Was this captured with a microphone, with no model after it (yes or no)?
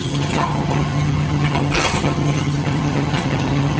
no